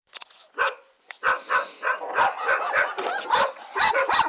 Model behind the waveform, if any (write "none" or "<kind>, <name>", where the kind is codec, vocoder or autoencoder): vocoder, Vocos